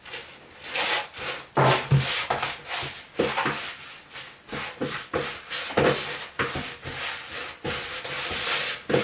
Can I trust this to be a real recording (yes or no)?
yes